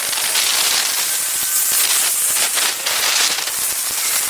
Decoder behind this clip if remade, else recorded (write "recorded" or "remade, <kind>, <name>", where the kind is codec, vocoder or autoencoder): recorded